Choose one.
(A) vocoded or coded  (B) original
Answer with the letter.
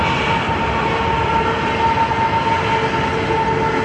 B